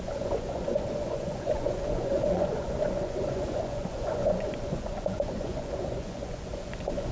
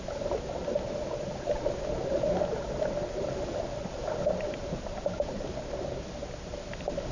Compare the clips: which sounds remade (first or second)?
first